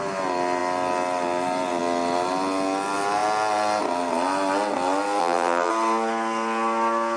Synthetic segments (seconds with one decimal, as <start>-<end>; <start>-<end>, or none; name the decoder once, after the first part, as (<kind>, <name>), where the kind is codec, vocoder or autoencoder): 5.2-5.7 (vocoder, BigVGAN v2)